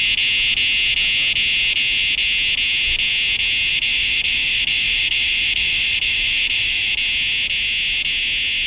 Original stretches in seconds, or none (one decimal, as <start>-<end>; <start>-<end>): 0.0-3.7; 6.9-8.7